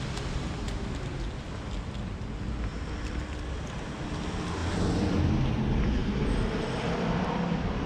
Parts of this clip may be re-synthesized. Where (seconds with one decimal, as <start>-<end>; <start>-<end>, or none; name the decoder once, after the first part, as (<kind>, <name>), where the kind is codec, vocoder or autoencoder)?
2.7-3.4 (vocoder, BigVGAN v2)